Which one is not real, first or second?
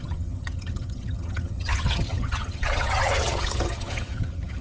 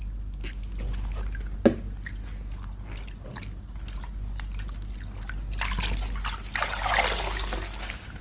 first